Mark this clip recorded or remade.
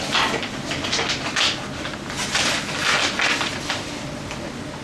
recorded